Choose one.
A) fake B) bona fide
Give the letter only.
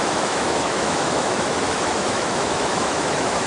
A